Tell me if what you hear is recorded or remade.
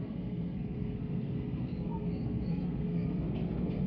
remade